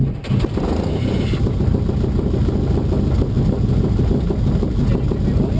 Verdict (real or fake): real